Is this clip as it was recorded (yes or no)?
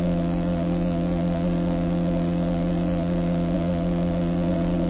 no